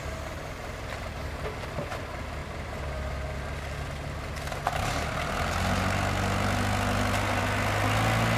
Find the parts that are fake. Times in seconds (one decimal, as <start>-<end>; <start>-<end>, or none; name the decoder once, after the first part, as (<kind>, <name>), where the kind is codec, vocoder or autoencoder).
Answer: none